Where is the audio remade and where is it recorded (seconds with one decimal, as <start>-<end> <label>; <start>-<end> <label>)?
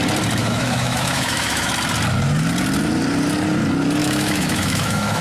0.0-0.4 recorded; 0.4-1.7 remade; 1.7-4.0 recorded; 4.0-5.2 remade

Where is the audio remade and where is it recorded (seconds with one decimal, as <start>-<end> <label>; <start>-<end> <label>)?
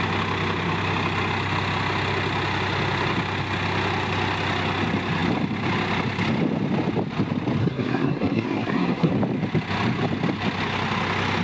0.0-7.6 recorded; 7.6-9.1 remade; 9.1-11.4 recorded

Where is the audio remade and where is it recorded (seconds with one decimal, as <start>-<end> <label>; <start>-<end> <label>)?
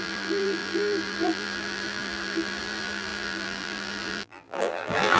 0.0-5.2 remade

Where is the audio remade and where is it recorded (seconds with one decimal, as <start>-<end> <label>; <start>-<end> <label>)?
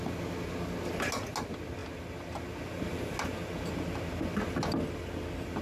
0.0-5.6 recorded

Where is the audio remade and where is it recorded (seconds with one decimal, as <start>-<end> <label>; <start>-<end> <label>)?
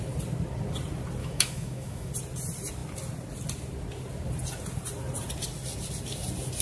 0.0-1.2 recorded; 1.2-2.1 remade; 2.1-6.6 recorded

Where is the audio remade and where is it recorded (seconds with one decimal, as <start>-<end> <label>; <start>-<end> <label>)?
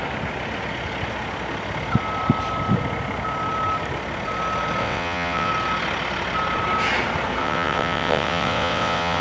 0.0-4.8 recorded; 4.8-5.5 remade; 5.5-7.4 recorded; 7.4-9.2 remade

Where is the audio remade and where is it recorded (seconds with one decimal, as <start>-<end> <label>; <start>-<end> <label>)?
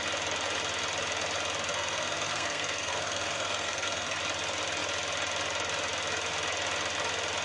0.0-1.7 recorded; 1.7-4.2 remade; 4.2-7.4 recorded